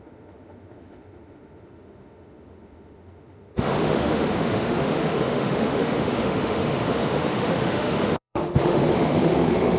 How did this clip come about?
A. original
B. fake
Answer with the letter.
B